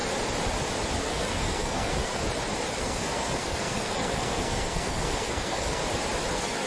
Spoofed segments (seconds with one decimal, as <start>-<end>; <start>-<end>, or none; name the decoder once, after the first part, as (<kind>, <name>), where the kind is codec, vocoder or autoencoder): 1.0-2.2 (codec, SNAC); 2.7-5.8; 6.3-6.7